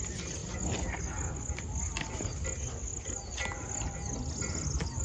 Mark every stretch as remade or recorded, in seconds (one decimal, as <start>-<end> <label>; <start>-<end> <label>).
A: 0.0-5.0 recorded